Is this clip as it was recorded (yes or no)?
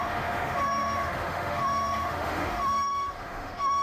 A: no